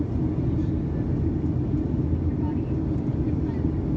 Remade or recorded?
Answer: recorded